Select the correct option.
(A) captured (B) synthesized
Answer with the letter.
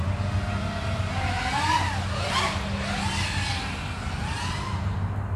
A